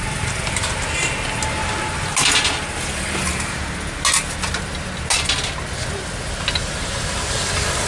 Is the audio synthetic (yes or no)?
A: no